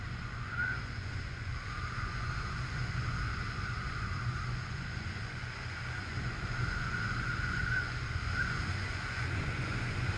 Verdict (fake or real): fake